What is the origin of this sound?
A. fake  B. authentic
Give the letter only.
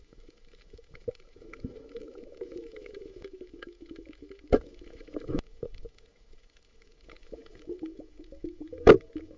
A